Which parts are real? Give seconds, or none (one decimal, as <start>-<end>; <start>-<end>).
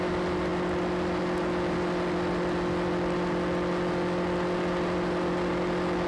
0.0-6.1